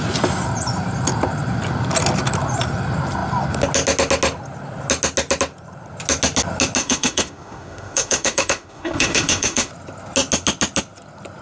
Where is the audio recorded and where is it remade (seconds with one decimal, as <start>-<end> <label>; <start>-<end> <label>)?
0.0-6.8 recorded; 6.8-9.7 remade; 9.7-11.4 recorded